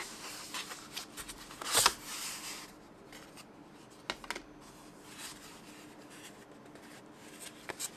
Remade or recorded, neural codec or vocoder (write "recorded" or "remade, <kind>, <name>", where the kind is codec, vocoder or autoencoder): recorded